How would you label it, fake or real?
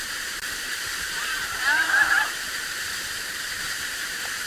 fake